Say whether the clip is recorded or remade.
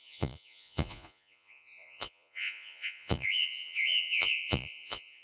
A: remade